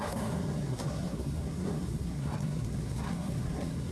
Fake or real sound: fake